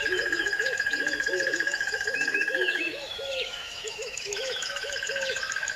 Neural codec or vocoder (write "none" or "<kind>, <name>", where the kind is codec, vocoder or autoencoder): autoencoder, DAC-VAE